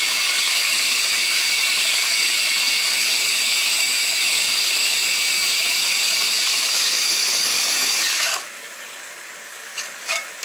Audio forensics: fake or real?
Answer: fake